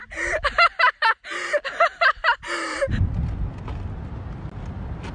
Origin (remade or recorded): recorded